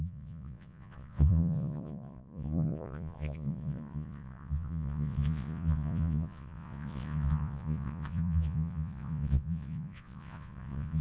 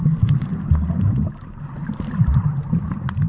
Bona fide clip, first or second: second